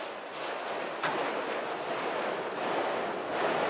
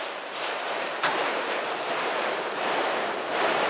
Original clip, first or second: first